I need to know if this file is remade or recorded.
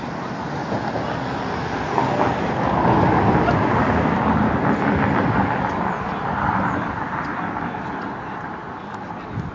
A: recorded